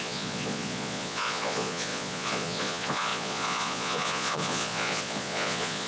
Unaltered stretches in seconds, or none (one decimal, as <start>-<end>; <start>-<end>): none